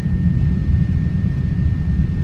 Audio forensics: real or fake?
real